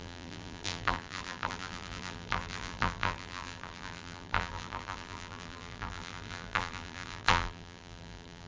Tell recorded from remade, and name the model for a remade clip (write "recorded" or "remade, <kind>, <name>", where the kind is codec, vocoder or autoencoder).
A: remade, vocoder, BigVGAN v2